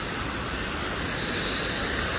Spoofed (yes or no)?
no